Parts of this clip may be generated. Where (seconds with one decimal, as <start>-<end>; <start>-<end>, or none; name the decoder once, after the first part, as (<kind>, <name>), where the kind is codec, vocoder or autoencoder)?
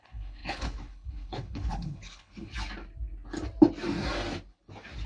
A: 0.0-2.5 (codec, HILCodec)